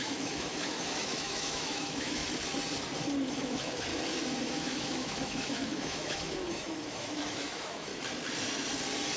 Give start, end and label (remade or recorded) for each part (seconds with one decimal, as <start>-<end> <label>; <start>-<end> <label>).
0.0-2.2 remade; 2.2-3.2 recorded; 3.2-3.9 remade; 3.9-4.5 recorded; 4.5-7.9 remade; 7.9-9.2 recorded